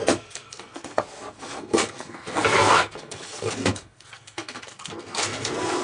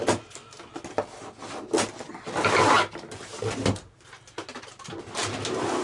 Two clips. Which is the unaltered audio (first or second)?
second